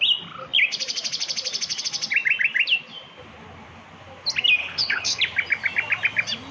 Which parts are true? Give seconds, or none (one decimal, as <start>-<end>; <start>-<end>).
0.0-4.6; 5.2-6.5